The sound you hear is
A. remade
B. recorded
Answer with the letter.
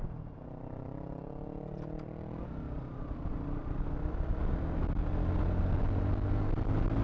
B